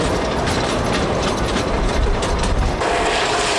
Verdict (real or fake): real